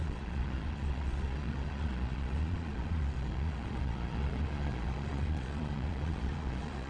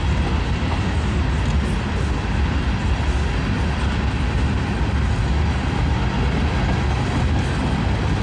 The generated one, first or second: first